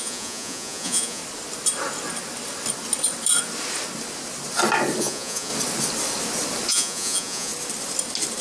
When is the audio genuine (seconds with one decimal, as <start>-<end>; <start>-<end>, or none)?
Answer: 1.2-5.0; 5.5-6.7; 7.5-8.4

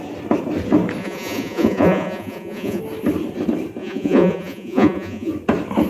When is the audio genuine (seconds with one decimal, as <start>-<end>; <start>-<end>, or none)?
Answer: 0.0-1.0; 2.8-3.8; 5.3-5.9